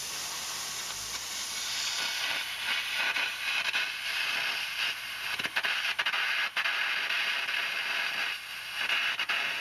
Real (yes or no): yes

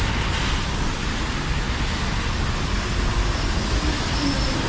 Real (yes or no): yes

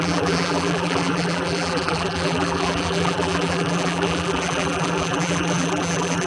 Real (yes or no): no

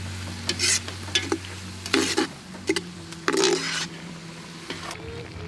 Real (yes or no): yes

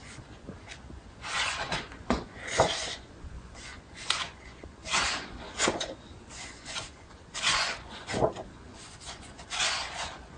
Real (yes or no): no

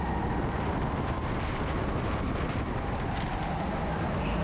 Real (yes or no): yes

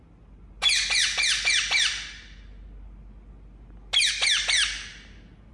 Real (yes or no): yes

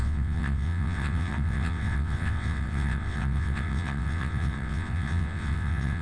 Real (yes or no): no